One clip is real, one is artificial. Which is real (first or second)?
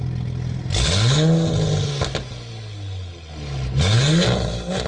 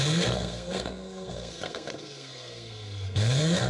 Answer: first